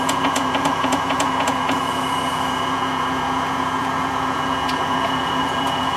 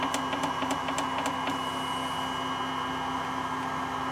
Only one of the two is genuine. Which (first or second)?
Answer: second